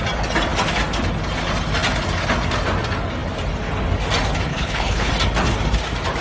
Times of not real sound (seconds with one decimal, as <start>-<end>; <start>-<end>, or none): 4.5-5.1